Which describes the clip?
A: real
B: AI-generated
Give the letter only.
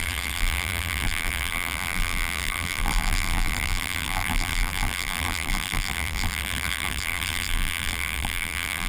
B